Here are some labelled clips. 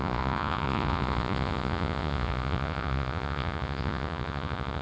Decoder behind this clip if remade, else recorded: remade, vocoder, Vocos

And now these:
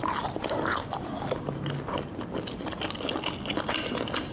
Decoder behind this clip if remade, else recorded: recorded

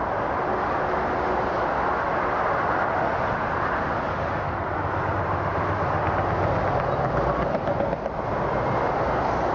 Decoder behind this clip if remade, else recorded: recorded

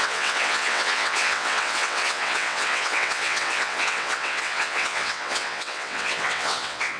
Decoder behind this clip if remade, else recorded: remade, vocoder, WaveNeXt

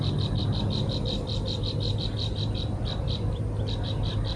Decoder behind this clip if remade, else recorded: recorded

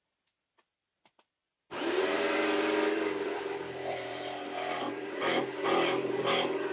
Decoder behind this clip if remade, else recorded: remade, vocoder, BigVGAN v2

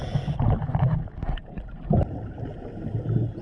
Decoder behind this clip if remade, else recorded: recorded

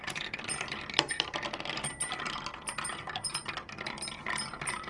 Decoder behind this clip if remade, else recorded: remade, vocoder, BigVGAN v2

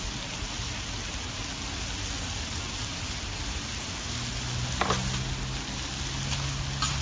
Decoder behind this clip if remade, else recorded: recorded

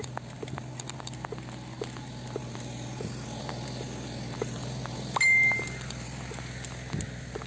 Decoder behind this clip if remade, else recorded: recorded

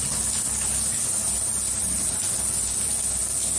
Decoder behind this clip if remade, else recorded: recorded